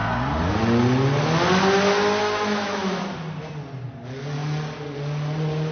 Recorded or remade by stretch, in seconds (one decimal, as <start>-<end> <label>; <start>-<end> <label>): 0.0-2.2 recorded; 2.2-3.0 remade; 3.0-5.7 recorded